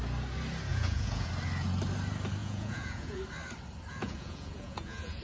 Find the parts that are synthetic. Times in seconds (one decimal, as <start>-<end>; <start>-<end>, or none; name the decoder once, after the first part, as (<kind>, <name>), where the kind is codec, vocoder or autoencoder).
0.7-1.3 (vocoder, Vocos); 2.4-3.2; 3.9-5.2